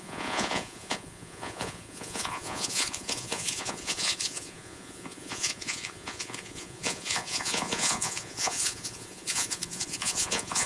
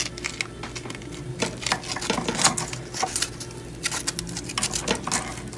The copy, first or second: first